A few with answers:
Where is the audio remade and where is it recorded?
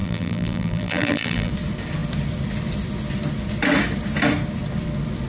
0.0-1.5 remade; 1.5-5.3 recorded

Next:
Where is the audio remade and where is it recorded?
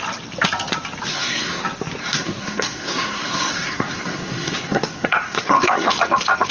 0.0-1.1 recorded; 1.1-1.6 remade; 1.6-2.0 recorded; 2.0-5.9 remade; 5.9-6.5 recorded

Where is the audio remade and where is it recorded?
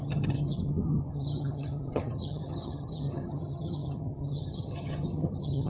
0.0-5.7 remade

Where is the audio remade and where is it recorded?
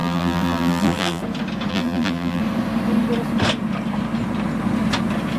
0.0-1.2 remade; 1.2-1.7 recorded; 1.7-2.4 remade; 2.4-5.4 recorded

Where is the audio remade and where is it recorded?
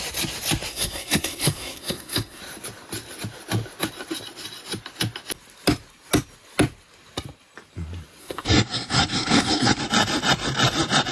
0.0-0.7 recorded; 0.7-2.4 remade; 2.4-8.2 recorded; 8.2-9.8 remade; 9.8-11.1 recorded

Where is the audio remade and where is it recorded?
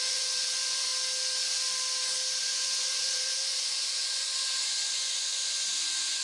0.0-0.9 remade; 0.9-2.4 recorded; 2.4-6.2 remade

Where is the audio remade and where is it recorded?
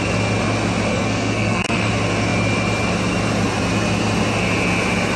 0.0-0.9 recorded; 0.9-1.9 remade; 1.9-5.2 recorded